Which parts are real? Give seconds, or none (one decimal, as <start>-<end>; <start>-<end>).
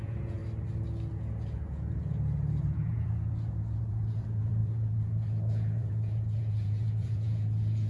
0.4-1.1